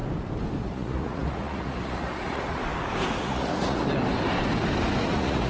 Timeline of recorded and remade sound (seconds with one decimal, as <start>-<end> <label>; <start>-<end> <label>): 0.0-0.6 recorded; 0.6-2.6 remade; 2.6-3.2 recorded; 3.2-3.8 remade; 3.8-5.0 recorded; 5.0-5.5 remade